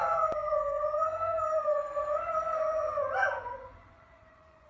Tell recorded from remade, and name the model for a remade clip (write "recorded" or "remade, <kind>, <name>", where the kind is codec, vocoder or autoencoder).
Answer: remade, vocoder, Vocos